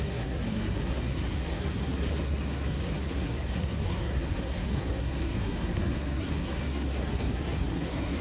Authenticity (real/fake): fake